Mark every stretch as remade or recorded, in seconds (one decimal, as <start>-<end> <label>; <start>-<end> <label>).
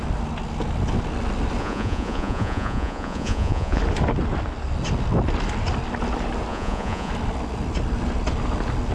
0.0-1.6 recorded; 1.6-3.8 remade; 3.8-6.5 recorded; 6.5-7.1 remade; 7.1-8.9 recorded